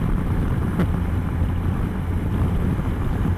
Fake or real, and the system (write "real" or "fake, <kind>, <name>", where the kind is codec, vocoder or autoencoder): fake, vocoder, BigVGAN v2